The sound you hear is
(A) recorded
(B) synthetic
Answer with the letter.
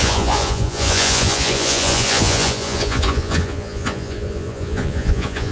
B